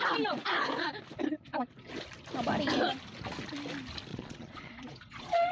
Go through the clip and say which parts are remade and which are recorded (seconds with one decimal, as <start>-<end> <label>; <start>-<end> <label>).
0.0-4.1 recorded; 4.1-5.5 remade